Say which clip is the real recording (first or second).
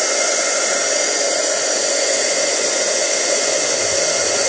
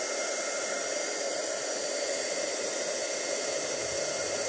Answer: second